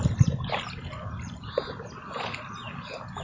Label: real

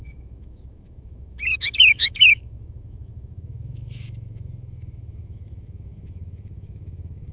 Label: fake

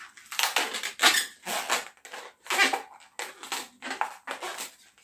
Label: real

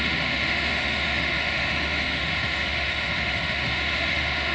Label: fake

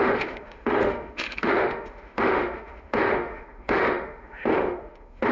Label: fake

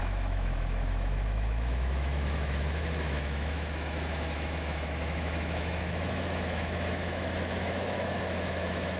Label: fake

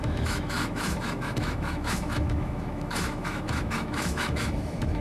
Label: fake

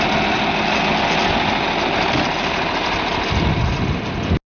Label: real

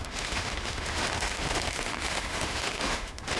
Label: fake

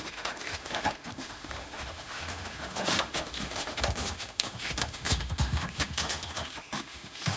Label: fake